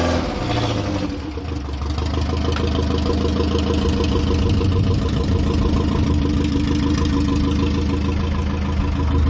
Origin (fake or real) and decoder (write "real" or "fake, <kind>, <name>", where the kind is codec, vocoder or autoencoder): real